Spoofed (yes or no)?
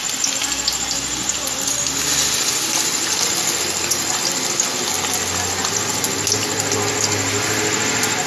no